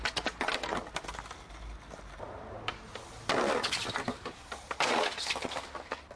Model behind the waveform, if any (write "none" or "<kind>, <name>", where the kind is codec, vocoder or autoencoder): none